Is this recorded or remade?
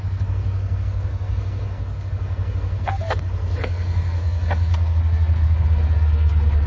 remade